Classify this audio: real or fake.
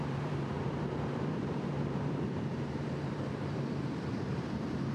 fake